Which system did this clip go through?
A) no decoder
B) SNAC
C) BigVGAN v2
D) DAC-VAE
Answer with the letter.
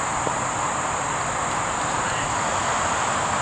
A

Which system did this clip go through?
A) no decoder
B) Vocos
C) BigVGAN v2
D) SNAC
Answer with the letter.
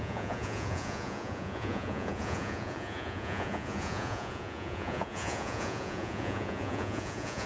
B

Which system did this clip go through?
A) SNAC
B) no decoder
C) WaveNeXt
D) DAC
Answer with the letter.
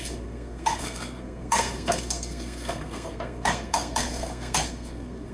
A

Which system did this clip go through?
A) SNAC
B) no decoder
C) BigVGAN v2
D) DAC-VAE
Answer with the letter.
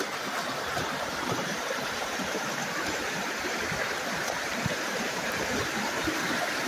C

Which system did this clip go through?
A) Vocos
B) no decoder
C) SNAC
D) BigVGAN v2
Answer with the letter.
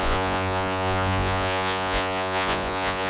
A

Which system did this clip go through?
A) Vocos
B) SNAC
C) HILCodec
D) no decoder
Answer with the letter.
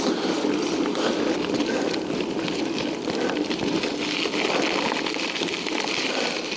D